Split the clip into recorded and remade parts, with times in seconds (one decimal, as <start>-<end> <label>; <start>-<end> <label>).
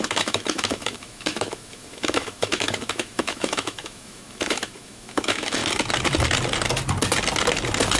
0.0-5.6 remade; 5.6-8.0 recorded